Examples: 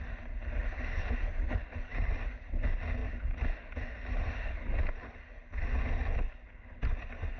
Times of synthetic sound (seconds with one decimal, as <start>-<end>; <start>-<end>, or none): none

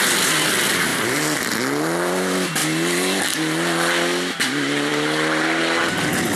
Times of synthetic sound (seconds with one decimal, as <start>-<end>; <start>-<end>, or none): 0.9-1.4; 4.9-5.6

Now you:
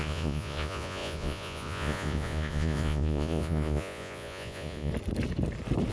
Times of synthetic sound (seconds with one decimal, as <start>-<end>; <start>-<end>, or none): 0.0-4.9

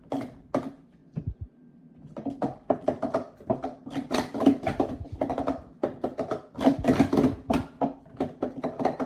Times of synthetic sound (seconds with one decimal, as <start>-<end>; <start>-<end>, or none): none

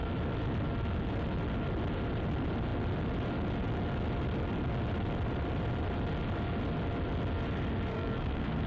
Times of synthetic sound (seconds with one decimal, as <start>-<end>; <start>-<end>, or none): 7.9-8.7

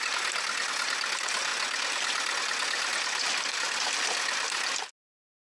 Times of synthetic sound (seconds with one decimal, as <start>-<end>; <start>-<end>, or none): none